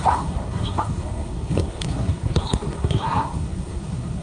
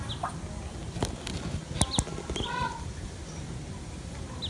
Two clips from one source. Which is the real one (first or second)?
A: second